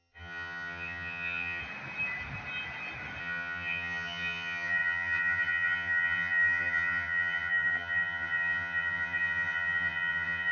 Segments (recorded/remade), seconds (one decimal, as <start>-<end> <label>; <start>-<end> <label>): 0.0-1.6 remade; 1.6-3.2 recorded; 3.2-10.5 remade